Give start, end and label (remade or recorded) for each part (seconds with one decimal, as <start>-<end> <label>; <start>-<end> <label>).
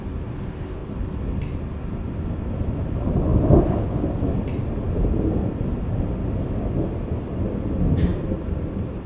0.0-0.8 recorded; 0.8-1.7 remade; 1.7-8.1 recorded; 8.1-9.1 remade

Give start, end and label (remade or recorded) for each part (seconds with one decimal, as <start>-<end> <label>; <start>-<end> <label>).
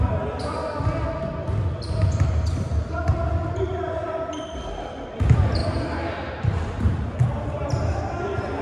0.0-5.6 recorded; 5.6-7.1 remade; 7.1-8.6 recorded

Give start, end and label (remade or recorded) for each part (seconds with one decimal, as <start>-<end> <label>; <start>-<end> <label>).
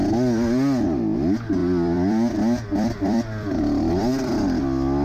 0.0-1.6 recorded; 1.6-4.6 remade; 4.6-5.0 recorded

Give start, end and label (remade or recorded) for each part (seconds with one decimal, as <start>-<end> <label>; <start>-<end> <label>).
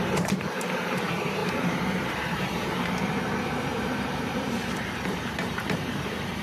0.0-6.4 remade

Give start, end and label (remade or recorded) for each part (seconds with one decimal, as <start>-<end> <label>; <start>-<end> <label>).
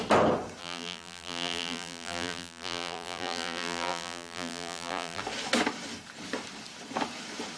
0.0-0.6 recorded; 0.6-5.2 remade; 5.2-7.6 recorded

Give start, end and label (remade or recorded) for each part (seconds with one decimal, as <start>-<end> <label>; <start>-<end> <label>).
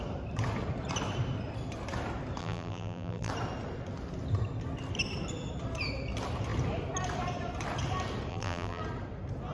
0.0-2.4 recorded; 2.4-3.3 remade; 3.3-8.3 recorded; 8.3-8.8 remade; 8.8-9.5 recorded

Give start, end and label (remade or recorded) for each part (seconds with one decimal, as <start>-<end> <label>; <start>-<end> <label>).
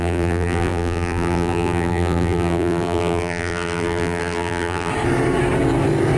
0.0-4.9 remade; 4.9-6.2 recorded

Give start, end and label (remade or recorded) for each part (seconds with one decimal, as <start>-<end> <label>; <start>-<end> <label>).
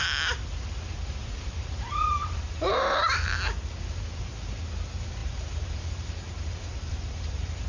0.0-1.2 recorded; 1.2-3.3 remade; 3.3-5.2 recorded; 5.2-7.7 remade